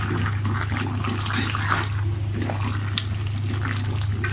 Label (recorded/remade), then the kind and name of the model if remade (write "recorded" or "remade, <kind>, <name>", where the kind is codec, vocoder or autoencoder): recorded